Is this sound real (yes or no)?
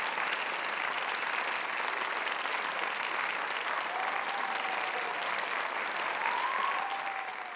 yes